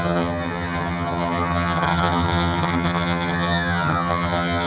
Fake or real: fake